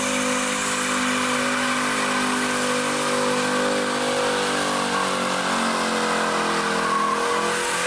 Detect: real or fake real